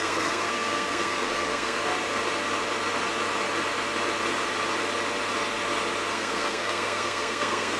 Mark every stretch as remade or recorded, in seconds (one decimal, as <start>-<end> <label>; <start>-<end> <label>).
0.0-1.8 remade; 1.8-6.1 recorded; 6.1-7.8 remade